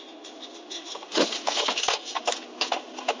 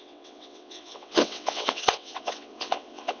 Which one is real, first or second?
first